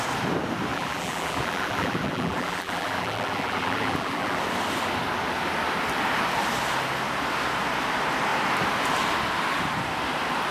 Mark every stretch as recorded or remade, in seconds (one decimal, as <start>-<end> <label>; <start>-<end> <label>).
0.0-0.7 recorded; 0.7-4.4 remade; 4.4-10.5 recorded